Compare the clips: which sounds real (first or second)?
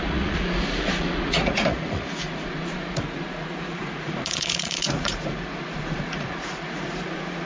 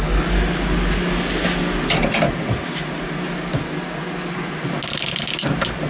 second